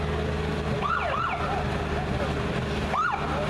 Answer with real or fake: real